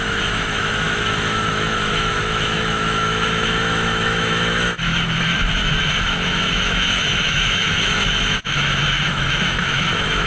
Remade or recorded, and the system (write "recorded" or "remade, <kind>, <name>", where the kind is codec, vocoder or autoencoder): remade, autoencoder, DAC-VAE